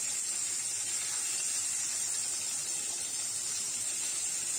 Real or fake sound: real